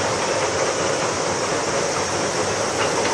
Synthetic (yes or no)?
no